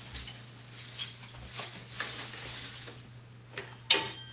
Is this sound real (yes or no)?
yes